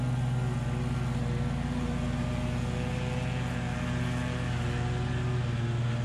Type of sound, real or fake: real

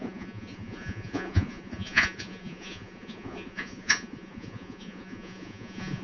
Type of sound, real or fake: fake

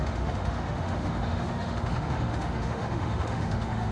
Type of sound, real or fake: fake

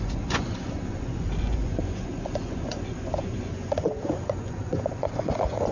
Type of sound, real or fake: fake